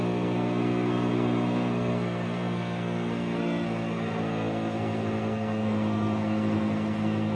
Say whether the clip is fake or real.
fake